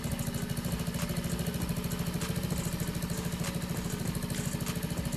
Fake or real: real